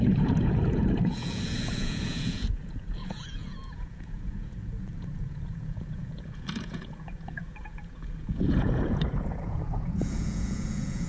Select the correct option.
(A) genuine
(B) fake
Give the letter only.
B